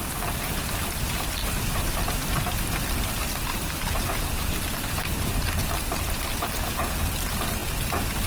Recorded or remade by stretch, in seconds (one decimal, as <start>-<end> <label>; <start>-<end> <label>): 0.0-1.4 recorded; 1.4-2.7 remade; 2.7-3.5 recorded; 3.5-6.3 remade; 6.3-8.3 recorded